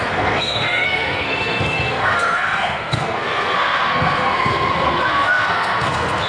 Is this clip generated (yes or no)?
yes